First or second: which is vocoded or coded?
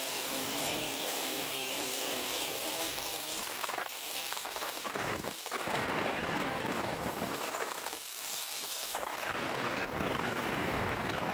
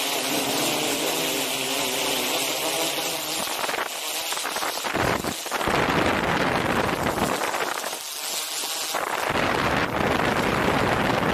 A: first